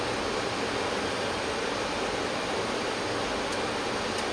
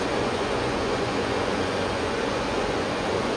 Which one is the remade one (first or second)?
second